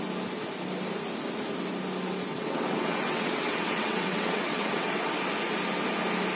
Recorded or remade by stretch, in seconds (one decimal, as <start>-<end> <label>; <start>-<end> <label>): 0.0-2.3 recorded; 2.3-5.1 remade; 5.1-6.4 recorded

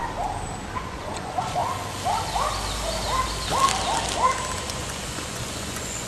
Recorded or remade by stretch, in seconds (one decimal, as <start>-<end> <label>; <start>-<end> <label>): 0.0-0.8 recorded; 0.8-1.6 remade; 1.6-4.6 recorded; 4.6-6.1 remade

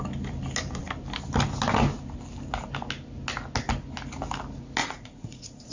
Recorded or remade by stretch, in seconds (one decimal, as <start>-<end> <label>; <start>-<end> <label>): 0.0-4.8 recorded; 4.8-5.7 remade

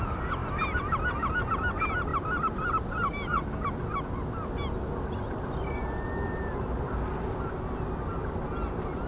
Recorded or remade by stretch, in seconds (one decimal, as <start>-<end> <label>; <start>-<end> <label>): 0.0-9.1 recorded